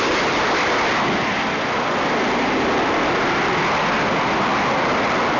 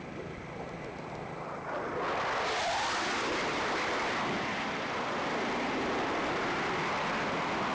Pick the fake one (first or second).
second